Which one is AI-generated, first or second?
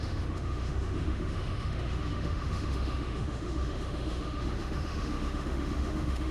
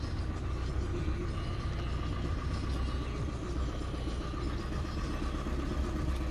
first